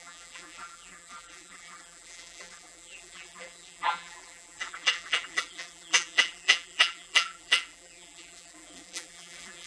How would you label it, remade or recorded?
remade